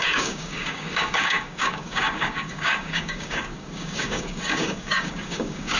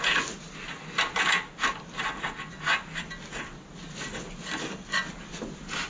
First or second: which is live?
second